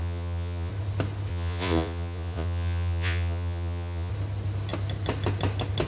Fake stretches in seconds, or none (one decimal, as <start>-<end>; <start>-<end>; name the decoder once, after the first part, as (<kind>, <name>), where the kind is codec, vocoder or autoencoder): 0.0-0.7 (vocoder, Vocos); 1.3-4.1